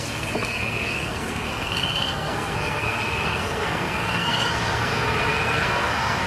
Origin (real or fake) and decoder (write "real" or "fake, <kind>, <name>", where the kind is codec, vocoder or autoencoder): fake, codec, SNAC